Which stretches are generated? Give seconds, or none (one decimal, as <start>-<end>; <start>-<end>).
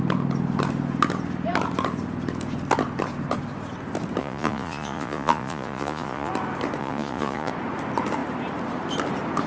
4.2-6.3; 6.8-7.5